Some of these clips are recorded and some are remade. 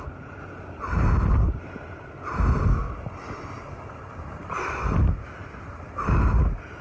recorded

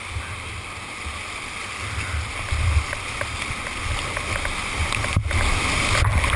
recorded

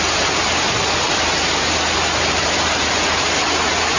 recorded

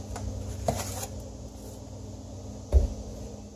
recorded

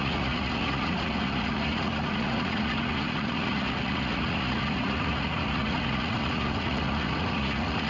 remade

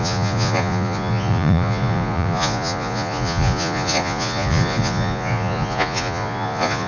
remade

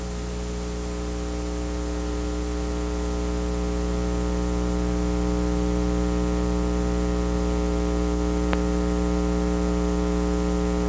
recorded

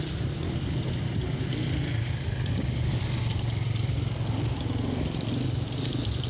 recorded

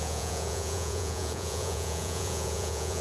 remade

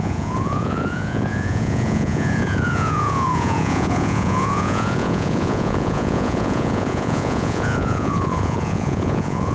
remade